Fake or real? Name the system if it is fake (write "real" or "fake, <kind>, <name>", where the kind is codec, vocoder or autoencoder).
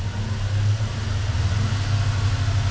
real